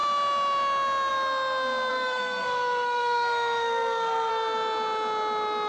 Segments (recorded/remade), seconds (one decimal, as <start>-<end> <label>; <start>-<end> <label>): 0.0-1.9 recorded; 1.9-4.3 remade; 4.3-5.7 recorded